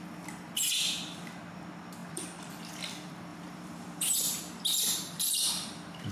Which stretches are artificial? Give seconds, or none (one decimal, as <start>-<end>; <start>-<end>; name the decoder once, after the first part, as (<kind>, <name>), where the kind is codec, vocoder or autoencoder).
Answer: 2.0-2.7 (vocoder, BigVGAN v2); 3.3-6.1